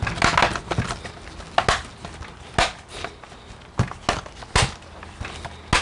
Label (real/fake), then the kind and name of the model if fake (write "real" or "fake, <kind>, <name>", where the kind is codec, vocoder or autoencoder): real